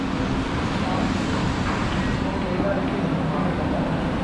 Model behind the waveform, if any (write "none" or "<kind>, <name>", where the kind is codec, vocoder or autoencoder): none